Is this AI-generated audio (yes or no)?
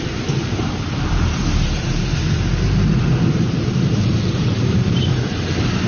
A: yes